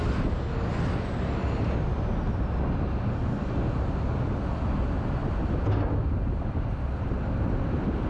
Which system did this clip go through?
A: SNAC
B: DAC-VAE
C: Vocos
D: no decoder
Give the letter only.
D